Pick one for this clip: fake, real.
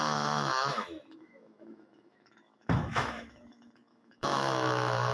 fake